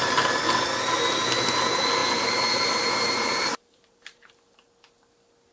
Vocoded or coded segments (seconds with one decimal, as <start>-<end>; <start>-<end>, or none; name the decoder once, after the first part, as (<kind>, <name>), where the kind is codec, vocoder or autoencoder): 2.0-4.3 (vocoder, BigVGAN v2)